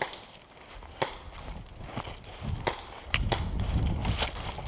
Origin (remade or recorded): recorded